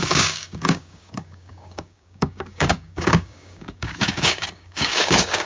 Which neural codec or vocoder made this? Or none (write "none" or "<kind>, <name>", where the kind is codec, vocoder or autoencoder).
codec, DAC